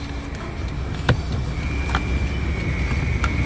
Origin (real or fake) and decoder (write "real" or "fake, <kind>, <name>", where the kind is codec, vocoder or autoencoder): real